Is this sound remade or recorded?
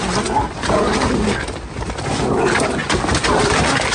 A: recorded